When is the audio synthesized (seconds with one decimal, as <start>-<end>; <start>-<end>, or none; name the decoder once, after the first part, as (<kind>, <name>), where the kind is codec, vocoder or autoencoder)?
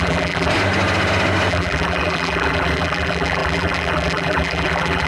0.0-0.5 (vocoder, BigVGAN v2); 1.5-5.1